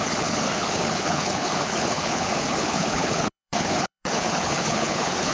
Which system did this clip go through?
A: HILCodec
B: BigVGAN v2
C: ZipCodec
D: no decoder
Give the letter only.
A